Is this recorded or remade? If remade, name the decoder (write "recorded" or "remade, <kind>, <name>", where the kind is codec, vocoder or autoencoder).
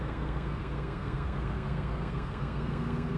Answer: remade, codec, SNAC